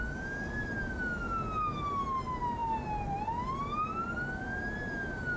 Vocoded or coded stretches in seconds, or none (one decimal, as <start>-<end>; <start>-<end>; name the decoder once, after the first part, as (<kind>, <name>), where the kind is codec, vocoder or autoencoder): none